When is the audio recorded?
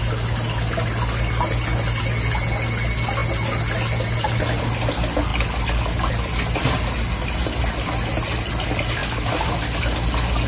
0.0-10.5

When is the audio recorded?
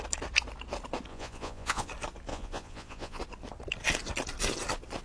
0.0-1.1; 1.9-2.3; 3.2-5.0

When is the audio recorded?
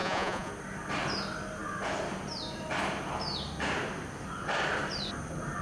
0.5-5.6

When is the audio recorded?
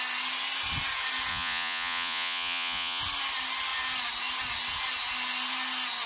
0.0-1.3; 3.0-6.1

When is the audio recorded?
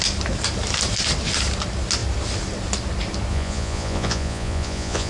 0.0-3.3